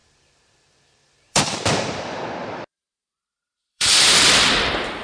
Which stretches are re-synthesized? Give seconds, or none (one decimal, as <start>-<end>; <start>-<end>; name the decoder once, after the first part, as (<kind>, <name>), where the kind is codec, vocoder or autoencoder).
0.0-1.4 (vocoder, BigVGAN v2); 2.4-4.5

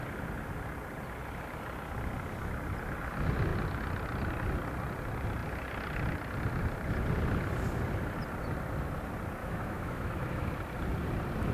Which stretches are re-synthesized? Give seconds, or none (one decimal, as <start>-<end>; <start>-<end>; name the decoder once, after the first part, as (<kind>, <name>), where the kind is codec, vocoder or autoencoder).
9.4-10.5 (autoencoder, DAC-VAE)

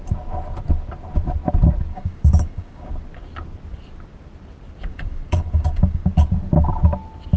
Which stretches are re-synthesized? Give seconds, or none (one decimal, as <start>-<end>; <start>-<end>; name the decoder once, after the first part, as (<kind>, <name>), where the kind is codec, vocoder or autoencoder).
1.9-2.9 (codec, DAC); 4.9-6.1

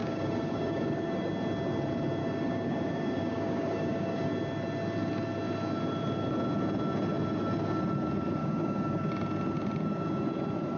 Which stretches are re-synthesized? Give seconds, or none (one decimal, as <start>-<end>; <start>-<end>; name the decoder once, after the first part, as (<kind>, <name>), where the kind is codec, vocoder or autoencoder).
0.0-1.3 (codec, DAC); 2.2-4.3; 8.4-9.1

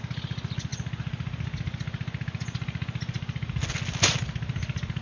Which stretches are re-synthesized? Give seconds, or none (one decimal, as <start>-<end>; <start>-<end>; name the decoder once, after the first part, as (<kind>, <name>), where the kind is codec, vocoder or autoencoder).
none